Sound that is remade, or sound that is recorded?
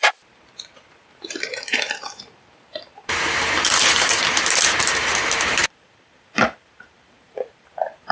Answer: remade